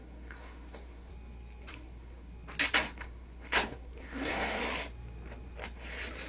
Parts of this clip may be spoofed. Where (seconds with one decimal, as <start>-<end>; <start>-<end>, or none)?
0.0-1.1; 1.7-2.3; 2.8-4.6

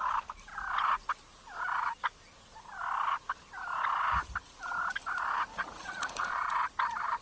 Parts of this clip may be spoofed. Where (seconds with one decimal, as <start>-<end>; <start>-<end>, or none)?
5.5-6.3

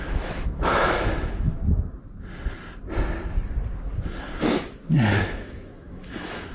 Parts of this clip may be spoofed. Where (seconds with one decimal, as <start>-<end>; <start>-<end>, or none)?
0.0-1.6; 5.1-6.5

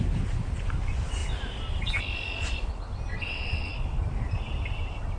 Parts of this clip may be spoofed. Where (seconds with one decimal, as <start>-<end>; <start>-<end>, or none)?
3.1-3.7

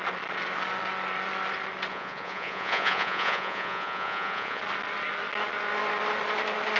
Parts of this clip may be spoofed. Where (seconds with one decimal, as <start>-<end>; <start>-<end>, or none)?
1.9-4.6